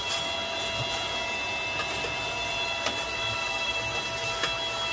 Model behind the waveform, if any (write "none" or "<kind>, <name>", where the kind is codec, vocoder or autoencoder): none